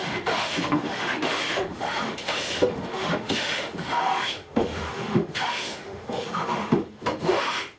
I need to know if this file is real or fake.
fake